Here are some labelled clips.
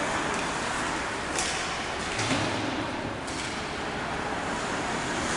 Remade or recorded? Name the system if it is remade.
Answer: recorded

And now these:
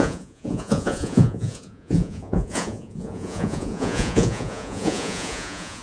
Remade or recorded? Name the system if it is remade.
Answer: remade, vocoder, Vocos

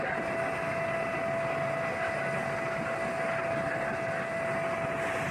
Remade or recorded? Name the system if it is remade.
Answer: recorded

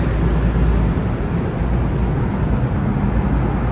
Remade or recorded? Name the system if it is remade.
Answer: recorded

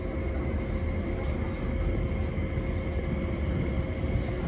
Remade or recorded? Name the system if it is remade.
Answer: recorded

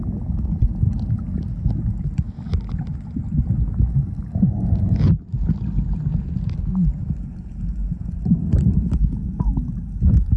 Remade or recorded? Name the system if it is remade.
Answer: recorded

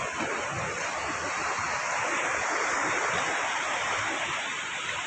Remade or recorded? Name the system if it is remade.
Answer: recorded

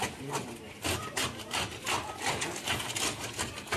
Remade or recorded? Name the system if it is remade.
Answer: recorded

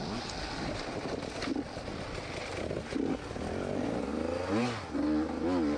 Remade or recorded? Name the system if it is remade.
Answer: recorded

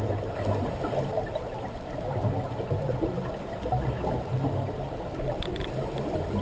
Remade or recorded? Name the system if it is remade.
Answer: recorded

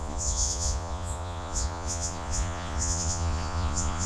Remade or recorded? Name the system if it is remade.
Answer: remade, vocoder, Vocos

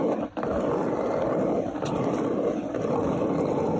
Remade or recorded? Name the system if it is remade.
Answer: recorded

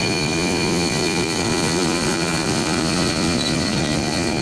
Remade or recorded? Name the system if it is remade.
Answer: remade, vocoder, Vocos